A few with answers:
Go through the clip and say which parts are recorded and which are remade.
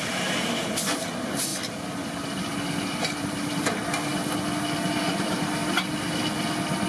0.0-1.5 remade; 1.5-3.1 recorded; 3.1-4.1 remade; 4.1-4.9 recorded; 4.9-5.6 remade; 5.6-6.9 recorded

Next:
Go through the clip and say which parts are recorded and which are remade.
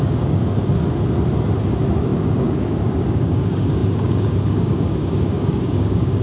0.0-0.4 remade; 0.4-1.6 recorded; 1.6-6.2 remade